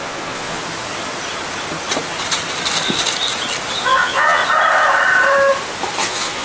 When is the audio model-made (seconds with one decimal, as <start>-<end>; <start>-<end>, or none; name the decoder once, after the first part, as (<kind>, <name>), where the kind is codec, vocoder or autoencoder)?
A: 0.0-0.6 (vocoder, Vocos); 3.8-4.4; 6.0-6.4